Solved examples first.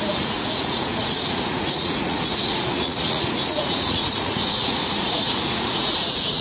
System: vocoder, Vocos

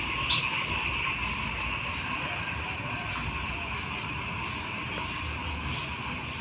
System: none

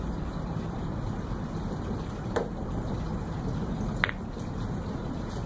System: none